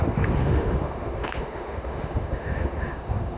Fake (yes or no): yes